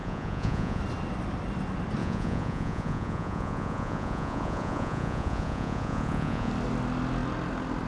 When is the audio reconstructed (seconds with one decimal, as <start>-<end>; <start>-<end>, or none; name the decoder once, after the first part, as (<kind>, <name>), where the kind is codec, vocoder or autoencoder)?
0.0-0.8 (vocoder, Vocos); 2.0-6.5